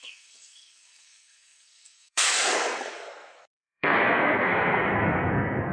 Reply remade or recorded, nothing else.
remade